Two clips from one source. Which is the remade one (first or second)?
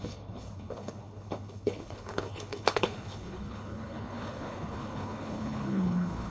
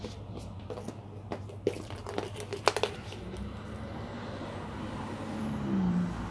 first